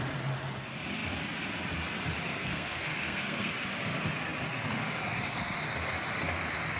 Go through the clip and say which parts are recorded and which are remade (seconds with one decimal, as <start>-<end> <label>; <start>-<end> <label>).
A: 0.0-2.3 recorded; 2.3-3.5 remade; 3.5-6.8 recorded